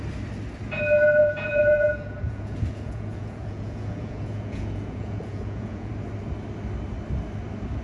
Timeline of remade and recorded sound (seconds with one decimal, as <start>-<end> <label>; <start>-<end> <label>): 0.0-1.2 recorded; 1.2-5.9 remade; 5.9-7.8 recorded